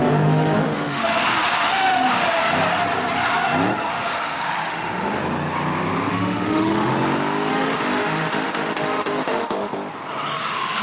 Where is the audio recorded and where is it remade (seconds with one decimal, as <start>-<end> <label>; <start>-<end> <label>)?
0.0-2.4 remade; 2.4-3.9 recorded; 3.9-5.2 remade; 5.2-6.1 recorded; 6.1-6.9 remade; 6.9-7.5 recorded; 7.5-9.7 remade; 9.7-10.4 recorded; 10.4-10.8 remade